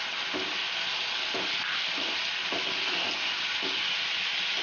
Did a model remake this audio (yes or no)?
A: no